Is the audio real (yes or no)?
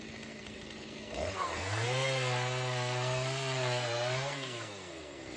no